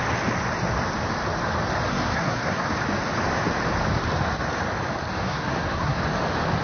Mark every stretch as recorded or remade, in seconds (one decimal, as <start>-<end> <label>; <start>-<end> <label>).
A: 0.0-1.9 recorded; 1.9-2.7 remade; 2.7-5.2 recorded; 5.2-6.0 remade; 6.0-6.6 recorded

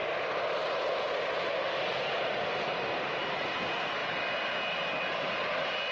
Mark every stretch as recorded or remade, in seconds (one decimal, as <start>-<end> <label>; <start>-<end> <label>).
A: 0.0-5.9 recorded

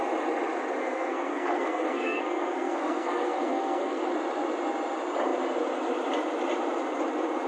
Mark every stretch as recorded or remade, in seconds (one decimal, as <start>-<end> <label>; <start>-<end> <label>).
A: 0.0-0.8 recorded; 0.8-4.1 remade; 4.1-7.5 recorded

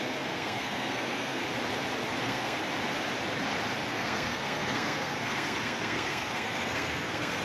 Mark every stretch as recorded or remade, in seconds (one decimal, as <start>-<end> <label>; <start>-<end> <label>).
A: 0.0-1.4 remade; 1.4-2.2 recorded; 2.2-2.6 remade; 2.6-3.9 recorded; 3.9-7.4 remade